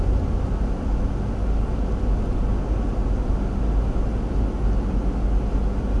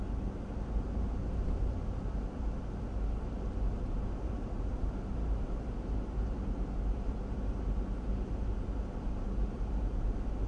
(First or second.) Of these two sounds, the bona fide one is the first